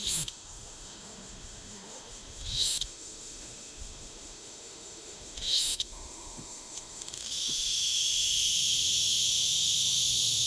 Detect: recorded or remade remade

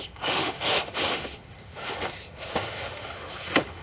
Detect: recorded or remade remade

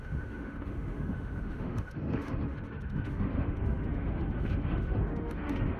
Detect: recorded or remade remade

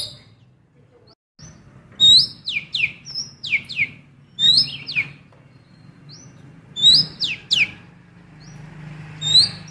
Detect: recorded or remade recorded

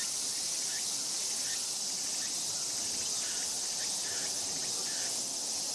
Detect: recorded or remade recorded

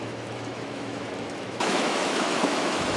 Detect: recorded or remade remade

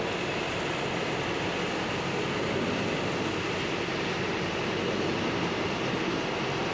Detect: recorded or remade recorded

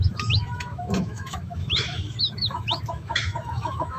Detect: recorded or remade remade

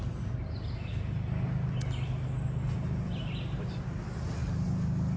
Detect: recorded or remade recorded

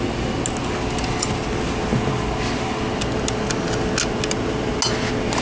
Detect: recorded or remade recorded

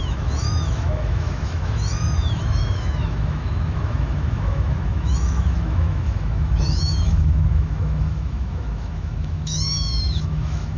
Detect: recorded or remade remade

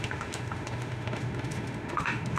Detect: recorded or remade remade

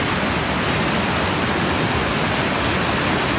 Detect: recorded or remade recorded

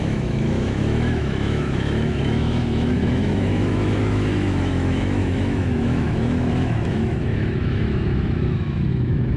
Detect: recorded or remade remade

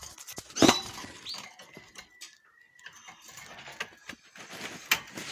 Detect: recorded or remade recorded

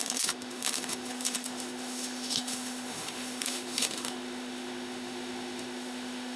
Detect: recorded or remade remade